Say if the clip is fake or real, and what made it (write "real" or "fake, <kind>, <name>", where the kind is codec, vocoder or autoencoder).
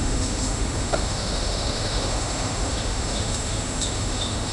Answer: fake, autoencoder, DAC-VAE